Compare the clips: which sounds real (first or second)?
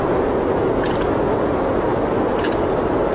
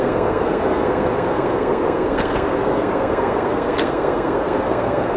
first